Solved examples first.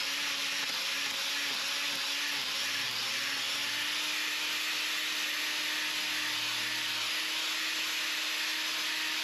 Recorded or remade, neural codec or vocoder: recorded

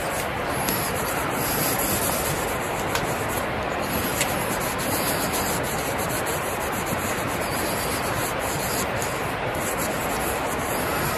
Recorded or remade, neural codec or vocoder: recorded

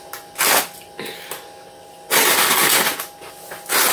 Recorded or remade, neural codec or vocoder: recorded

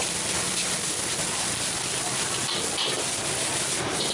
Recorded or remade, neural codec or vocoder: recorded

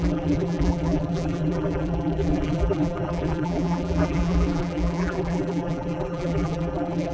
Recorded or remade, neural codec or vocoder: remade, vocoder, BigVGAN v2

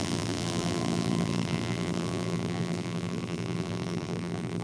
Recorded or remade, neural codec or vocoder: remade, vocoder, BigVGAN v2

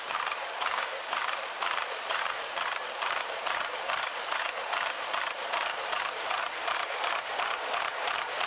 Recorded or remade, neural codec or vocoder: remade, vocoder, BigVGAN v2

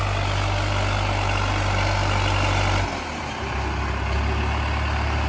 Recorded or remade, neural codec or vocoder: recorded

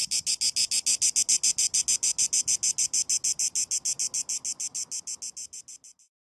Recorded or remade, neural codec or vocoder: recorded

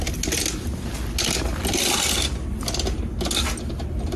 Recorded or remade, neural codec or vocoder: recorded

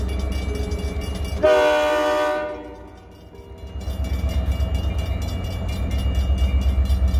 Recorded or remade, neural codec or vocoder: recorded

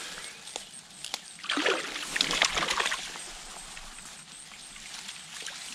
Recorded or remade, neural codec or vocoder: recorded